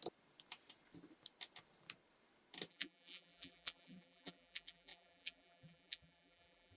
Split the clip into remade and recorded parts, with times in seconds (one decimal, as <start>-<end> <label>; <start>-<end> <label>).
0.0-2.7 recorded; 2.7-6.8 remade